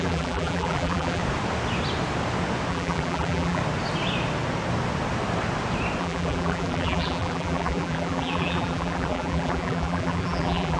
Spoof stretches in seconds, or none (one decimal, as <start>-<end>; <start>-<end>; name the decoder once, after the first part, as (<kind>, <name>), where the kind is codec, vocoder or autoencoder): 0.0-1.2 (vocoder, BigVGAN v2); 2.7-3.6; 6.0-10.8